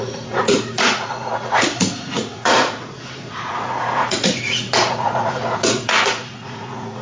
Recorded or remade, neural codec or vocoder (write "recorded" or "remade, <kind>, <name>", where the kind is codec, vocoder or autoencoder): remade, vocoder, Vocos